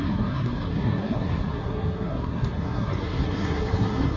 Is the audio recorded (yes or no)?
no